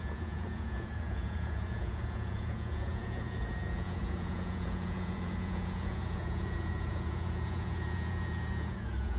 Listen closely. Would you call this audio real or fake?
fake